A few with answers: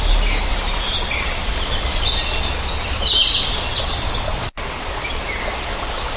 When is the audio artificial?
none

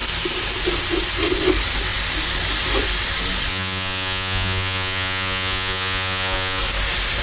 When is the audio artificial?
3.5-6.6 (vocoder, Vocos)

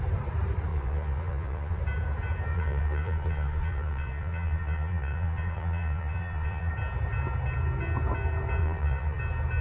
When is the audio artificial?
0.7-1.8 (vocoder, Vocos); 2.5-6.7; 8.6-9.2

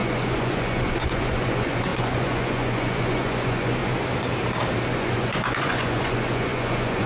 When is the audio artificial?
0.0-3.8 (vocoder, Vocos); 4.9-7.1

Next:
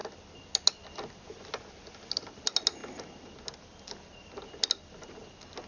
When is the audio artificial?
none

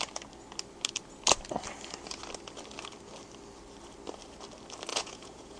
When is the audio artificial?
4.9-5.6 (vocoder, Vocos)

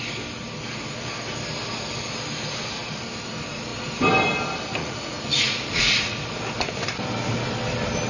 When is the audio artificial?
4.8-6.0 (vocoder, Vocos)

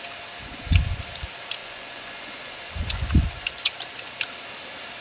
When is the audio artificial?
0.4-1.0 (vocoder, Vocos); 1.6-3.7